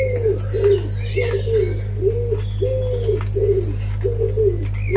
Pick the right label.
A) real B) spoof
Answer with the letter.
A